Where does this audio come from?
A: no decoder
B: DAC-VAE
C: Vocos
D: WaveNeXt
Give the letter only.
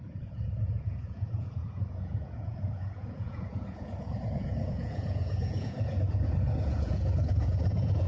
C